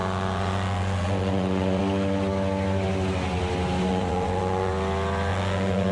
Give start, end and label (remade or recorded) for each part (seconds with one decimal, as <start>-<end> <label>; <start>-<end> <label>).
0.0-1.8 remade; 1.8-3.9 recorded; 3.9-4.7 remade; 4.7-5.3 recorded; 5.3-5.9 remade